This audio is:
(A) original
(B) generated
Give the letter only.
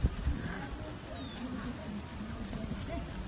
A